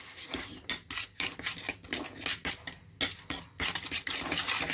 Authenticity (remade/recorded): recorded